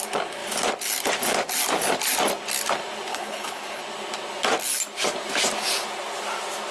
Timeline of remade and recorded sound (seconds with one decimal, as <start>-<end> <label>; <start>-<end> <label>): 0.0-3.1 recorded; 3.1-3.8 remade; 3.8-6.7 recorded